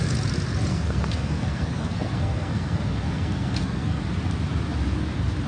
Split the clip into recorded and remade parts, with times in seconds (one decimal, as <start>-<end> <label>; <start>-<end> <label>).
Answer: 0.0-0.7 recorded; 0.7-4.0 remade; 4.0-5.5 recorded